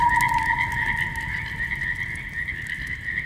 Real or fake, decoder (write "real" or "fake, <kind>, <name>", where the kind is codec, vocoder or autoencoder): real